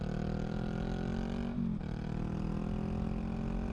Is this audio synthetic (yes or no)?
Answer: no